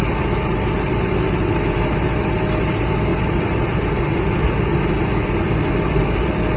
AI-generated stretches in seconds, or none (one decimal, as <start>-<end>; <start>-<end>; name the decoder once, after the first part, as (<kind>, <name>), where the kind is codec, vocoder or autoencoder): 3.1-4.0 (vocoder, BigVGAN v2)